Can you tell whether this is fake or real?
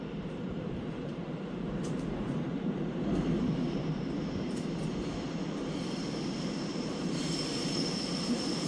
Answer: fake